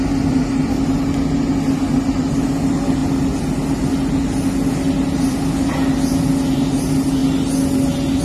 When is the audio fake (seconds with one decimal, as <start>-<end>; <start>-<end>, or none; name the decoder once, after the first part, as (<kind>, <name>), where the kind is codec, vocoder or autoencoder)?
none